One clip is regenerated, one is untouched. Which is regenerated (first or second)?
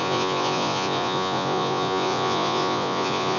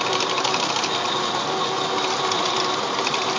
first